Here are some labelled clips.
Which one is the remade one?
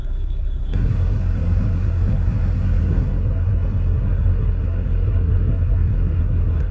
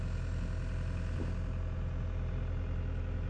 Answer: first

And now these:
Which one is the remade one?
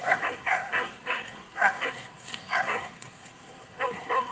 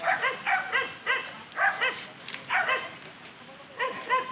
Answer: first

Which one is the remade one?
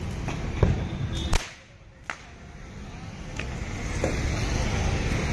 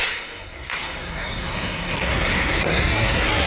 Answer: second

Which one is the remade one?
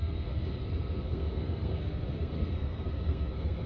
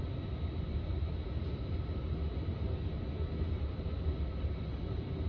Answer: first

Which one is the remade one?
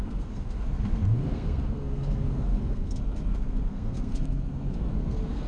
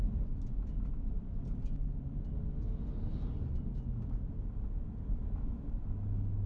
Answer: first